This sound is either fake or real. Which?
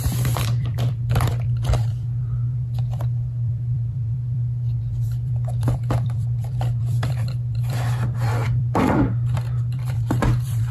fake